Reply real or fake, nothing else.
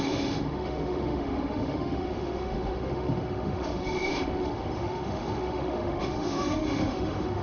fake